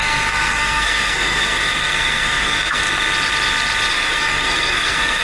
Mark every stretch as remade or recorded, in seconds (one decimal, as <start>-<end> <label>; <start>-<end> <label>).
0.0-2.8 remade; 2.8-3.9 recorded; 3.9-5.2 remade